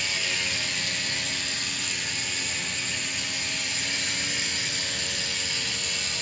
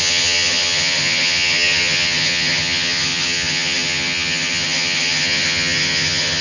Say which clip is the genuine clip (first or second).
first